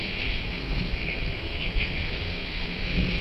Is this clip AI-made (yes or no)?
yes